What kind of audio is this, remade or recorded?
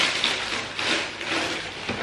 recorded